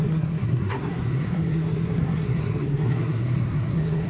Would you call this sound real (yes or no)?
no